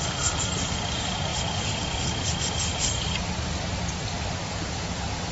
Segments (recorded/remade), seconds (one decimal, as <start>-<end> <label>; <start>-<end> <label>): 0.0-5.3 recorded